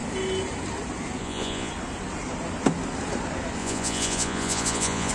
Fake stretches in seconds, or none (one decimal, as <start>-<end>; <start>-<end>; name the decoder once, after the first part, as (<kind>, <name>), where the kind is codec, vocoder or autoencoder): 1.2-1.7 (vocoder, Vocos); 3.6-5.1

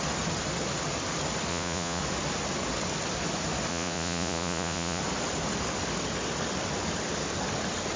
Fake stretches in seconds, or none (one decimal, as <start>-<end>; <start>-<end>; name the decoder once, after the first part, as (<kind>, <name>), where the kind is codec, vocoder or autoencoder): 1.5-2.0 (vocoder, Vocos); 3.7-5.0